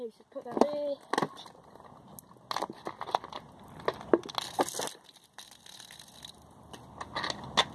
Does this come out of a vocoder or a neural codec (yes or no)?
no